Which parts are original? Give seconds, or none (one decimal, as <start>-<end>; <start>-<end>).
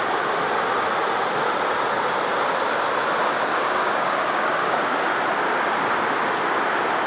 0.0-3.5; 5.1-7.1